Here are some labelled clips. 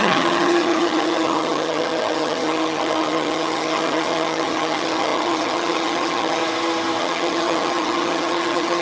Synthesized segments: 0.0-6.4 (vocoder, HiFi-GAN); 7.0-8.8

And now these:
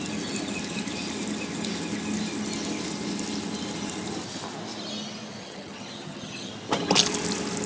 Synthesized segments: 5.4-6.5 (vocoder, HiFi-GAN)

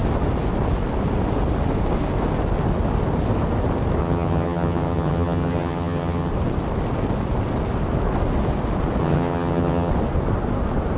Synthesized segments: 4.0-6.3 (vocoder, HiFi-GAN); 9.0-9.9

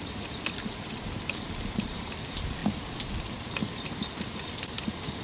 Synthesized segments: none